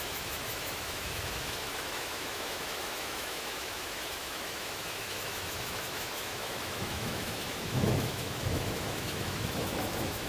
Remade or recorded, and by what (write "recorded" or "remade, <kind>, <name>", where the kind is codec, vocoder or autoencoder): remade, autoencoder, DAC-VAE